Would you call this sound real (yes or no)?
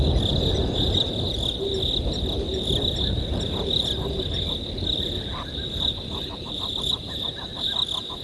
yes